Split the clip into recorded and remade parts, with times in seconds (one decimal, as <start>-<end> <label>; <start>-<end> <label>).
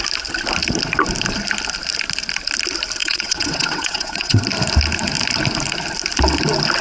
0.0-3.0 recorded; 3.0-4.4 remade; 4.4-6.8 recorded